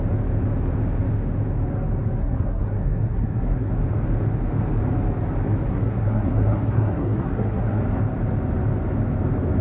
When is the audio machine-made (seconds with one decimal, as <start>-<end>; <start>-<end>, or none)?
2.2-3.7; 5.7-7.8